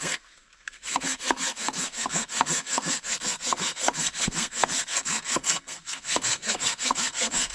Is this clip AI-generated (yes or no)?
yes